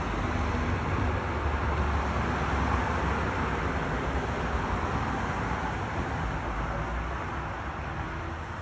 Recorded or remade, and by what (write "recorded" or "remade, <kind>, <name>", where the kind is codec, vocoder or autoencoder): recorded